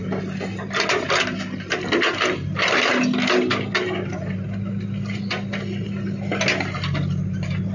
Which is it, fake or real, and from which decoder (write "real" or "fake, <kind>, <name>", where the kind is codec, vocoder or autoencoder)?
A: real